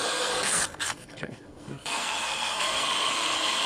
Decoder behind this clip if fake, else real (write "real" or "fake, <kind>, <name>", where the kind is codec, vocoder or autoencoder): fake, codec, SNAC